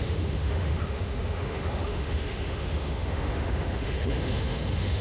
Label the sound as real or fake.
fake